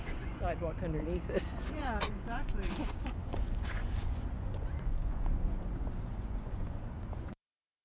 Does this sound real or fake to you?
fake